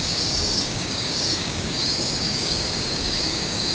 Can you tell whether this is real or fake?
fake